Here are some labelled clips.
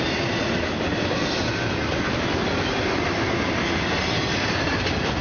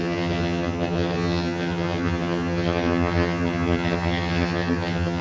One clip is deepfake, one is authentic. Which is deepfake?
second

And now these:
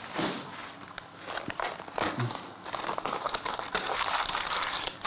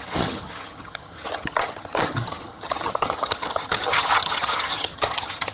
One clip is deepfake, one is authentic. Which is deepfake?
second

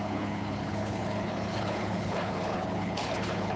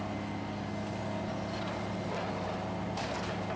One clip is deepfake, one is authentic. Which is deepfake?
first